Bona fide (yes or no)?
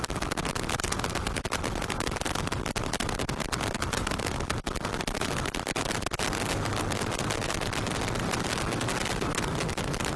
yes